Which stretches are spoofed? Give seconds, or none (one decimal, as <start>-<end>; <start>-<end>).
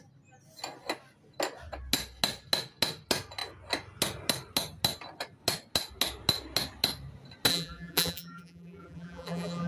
7.5-9.7